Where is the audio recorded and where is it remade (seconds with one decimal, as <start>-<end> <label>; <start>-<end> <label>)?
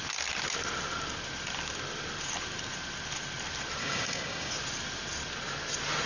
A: 0.0-3.8 recorded; 3.8-4.5 remade; 4.5-6.1 recorded